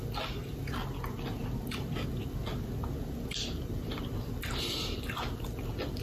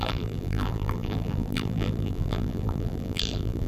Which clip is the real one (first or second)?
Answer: first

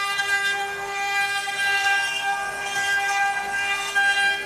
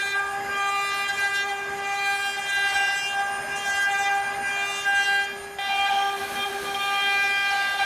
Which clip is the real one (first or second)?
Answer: second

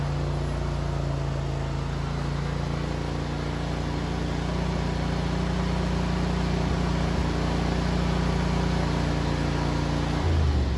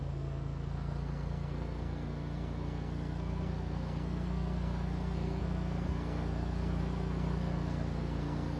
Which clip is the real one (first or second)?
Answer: first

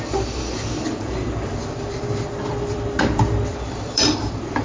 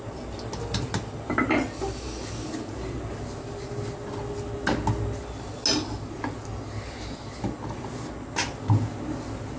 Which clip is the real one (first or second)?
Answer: second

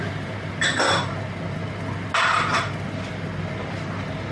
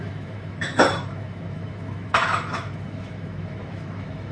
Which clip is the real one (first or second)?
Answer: first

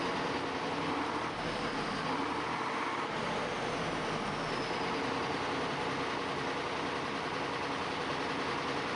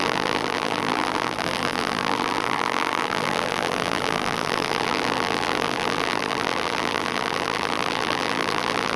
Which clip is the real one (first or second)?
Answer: first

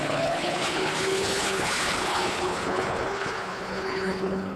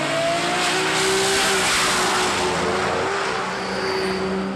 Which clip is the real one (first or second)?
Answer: second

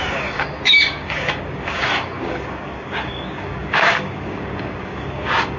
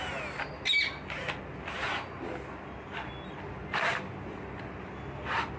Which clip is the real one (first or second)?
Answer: second